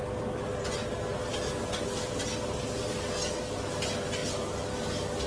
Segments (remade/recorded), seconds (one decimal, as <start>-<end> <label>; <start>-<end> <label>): 0.0-5.3 recorded